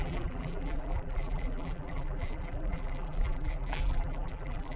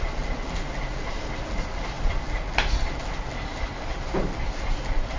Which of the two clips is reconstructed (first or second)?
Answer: first